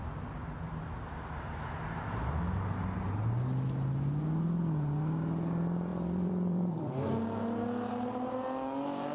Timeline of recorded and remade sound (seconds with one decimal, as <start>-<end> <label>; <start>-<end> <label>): 0.0-5.9 recorded; 5.9-7.0 remade; 7.0-9.1 recorded

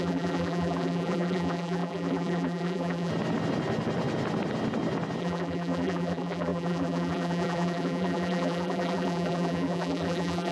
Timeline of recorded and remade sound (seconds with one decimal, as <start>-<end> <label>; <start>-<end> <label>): 0.0-3.1 remade; 3.1-5.2 recorded; 5.2-10.5 remade

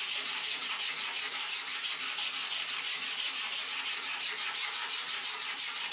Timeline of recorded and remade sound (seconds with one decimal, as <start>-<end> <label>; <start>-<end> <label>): 0.0-0.6 remade; 0.6-3.9 recorded; 3.9-5.9 remade

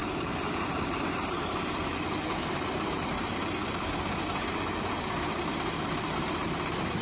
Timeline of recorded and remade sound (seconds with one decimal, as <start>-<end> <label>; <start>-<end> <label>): 0.0-3.6 remade; 3.6-4.2 recorded; 4.2-7.0 remade

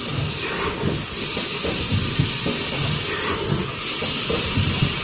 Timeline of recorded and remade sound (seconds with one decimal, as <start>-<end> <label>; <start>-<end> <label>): 0.0-5.0 recorded

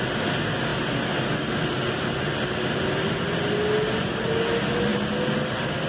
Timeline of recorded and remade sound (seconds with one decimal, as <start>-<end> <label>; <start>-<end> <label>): 0.0-5.9 recorded